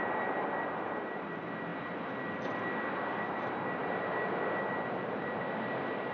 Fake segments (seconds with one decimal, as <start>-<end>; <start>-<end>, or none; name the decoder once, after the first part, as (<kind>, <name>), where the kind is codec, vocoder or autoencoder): none